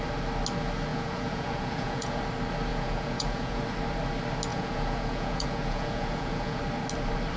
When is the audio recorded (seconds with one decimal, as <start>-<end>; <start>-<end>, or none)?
0.0-0.9; 2.2-2.7; 3.6-4.5; 6.6-7.4